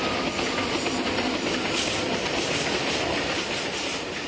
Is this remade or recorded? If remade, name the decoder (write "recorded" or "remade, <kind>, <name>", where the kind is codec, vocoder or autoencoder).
recorded